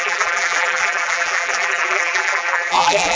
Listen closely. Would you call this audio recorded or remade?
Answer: remade